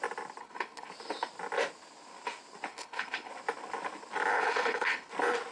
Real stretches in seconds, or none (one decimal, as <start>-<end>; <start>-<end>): 0.0-0.4; 0.9-2.7; 3.3-4.3; 5.1-5.5